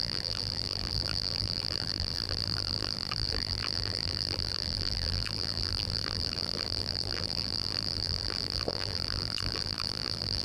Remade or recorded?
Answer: remade